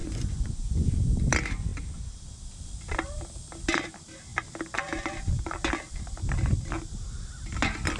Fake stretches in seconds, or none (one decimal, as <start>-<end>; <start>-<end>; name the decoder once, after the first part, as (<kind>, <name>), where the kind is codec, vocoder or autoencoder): 0.0-1.2 (vocoder, Vocos)